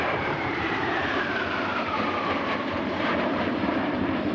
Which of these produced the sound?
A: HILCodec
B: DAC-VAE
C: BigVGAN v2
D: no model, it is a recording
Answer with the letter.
C